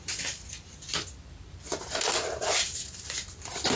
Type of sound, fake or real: real